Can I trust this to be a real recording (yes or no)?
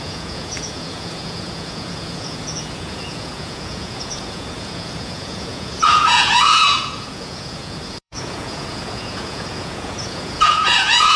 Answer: no